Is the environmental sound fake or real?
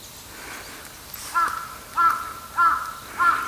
real